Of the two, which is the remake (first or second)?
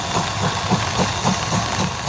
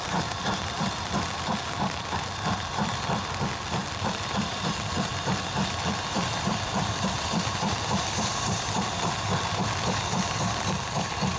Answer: second